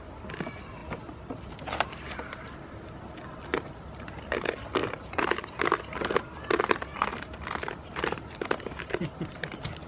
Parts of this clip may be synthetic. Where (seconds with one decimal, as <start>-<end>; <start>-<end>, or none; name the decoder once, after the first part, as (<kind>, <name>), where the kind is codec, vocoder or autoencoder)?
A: 4.8-5.6 (vocoder, BigVGAN v2); 7.1-9.3